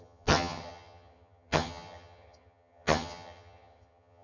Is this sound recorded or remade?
remade